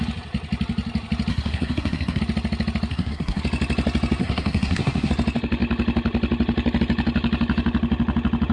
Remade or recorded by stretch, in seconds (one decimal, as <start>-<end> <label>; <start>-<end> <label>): 0.0-1.3 recorded; 1.3-2.2 remade; 2.2-2.9 recorded; 2.9-3.4 remade; 3.4-4.2 recorded; 4.2-5.1 remade; 5.1-8.5 recorded